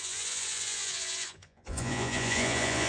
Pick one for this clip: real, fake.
fake